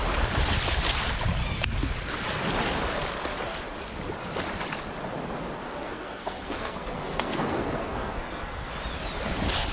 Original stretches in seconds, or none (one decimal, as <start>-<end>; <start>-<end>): 0.0-5.8; 8.7-9.7